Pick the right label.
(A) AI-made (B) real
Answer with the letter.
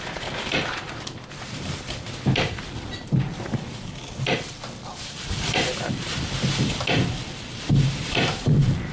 A